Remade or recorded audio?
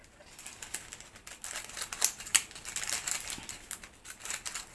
recorded